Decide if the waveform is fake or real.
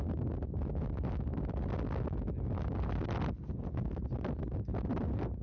real